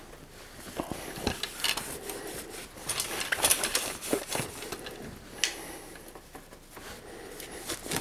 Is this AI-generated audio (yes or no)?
no